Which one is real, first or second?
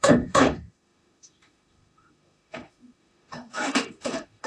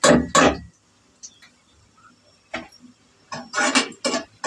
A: second